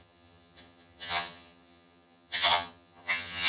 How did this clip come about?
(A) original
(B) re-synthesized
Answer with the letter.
B